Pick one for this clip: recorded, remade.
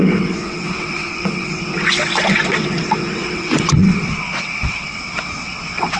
remade